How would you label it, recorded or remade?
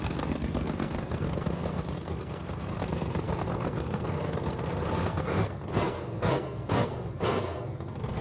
remade